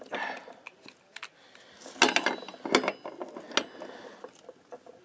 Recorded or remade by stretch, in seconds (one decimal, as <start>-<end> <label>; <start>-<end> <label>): 0.0-5.0 recorded